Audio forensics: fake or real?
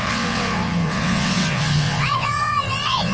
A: fake